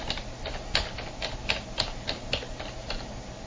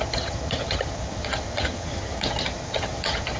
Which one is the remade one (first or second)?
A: second